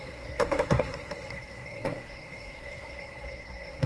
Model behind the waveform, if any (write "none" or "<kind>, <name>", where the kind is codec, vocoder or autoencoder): codec, SNAC